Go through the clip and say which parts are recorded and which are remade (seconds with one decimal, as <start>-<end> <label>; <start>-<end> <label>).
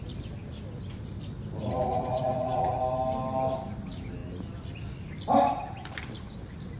0.0-1.6 recorded; 1.6-2.8 remade; 2.8-6.8 recorded